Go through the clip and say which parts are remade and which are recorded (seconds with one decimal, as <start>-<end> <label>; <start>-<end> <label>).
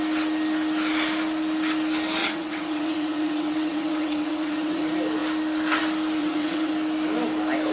0.0-2.2 recorded; 2.2-4.8 remade; 4.8-6.2 recorded; 6.2-6.7 remade; 6.7-7.7 recorded